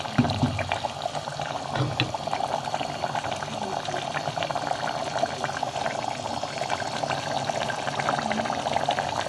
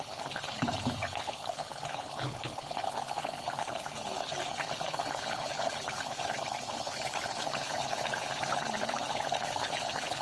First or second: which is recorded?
first